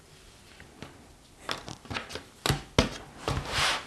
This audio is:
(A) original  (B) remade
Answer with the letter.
A